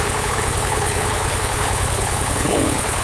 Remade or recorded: remade